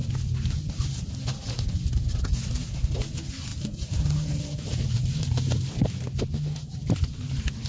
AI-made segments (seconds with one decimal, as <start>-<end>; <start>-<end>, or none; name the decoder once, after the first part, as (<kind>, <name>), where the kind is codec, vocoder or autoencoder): 3.5-5.6 (vocoder, BigVGAN v2)